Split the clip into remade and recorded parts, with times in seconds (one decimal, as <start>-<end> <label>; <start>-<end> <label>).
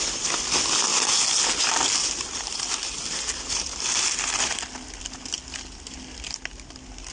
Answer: 0.0-7.1 recorded